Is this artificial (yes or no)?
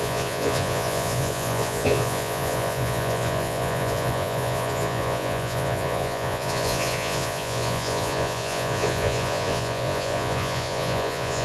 yes